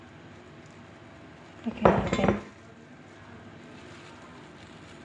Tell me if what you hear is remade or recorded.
recorded